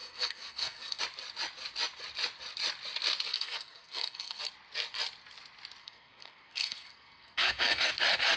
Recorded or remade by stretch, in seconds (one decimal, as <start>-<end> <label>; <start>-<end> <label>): 0.0-1.0 remade; 1.0-3.3 recorded; 3.3-4.4 remade; 4.4-5.8 recorded; 5.8-7.9 remade; 7.9-8.4 recorded